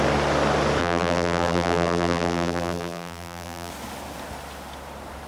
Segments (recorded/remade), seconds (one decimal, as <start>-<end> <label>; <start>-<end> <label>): 0.0-0.8 recorded; 0.8-3.7 remade; 3.7-5.3 recorded